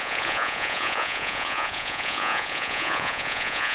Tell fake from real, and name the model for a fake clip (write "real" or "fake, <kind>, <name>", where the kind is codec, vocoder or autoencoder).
fake, vocoder, Vocos